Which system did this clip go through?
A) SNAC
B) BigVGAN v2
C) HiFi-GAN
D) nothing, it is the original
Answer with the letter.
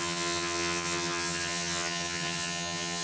C